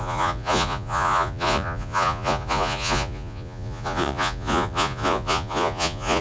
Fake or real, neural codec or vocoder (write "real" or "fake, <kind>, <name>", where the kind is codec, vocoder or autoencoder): fake, vocoder, Vocos